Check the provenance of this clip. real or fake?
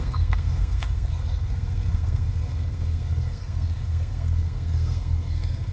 fake